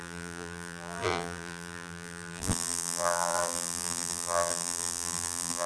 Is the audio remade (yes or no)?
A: yes